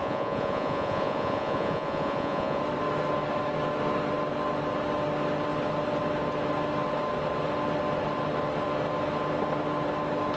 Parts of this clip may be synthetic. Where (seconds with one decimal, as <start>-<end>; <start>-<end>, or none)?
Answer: 0.0-2.6